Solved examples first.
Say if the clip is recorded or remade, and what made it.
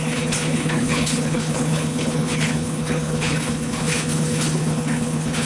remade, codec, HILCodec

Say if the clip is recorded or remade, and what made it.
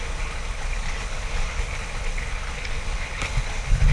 remade, codec, HILCodec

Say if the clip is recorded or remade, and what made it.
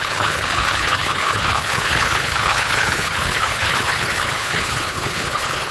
remade, codec, HILCodec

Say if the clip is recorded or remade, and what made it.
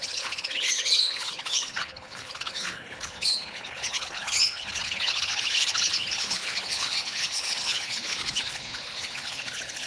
remade, codec, HILCodec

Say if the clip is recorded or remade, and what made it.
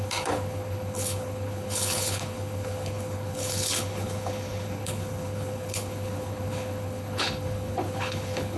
remade, codec, HILCodec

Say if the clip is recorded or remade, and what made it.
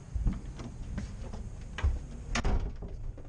recorded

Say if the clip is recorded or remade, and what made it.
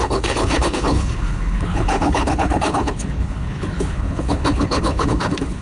remade, codec, HILCodec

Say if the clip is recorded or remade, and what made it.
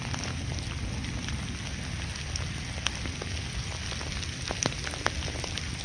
recorded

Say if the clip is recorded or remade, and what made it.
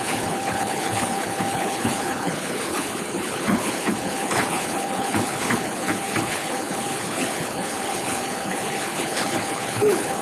remade, codec, HILCodec